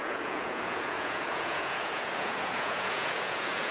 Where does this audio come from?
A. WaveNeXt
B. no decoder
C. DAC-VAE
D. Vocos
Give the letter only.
D